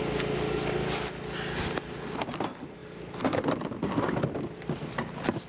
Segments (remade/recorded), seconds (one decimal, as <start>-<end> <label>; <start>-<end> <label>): 0.0-5.5 recorded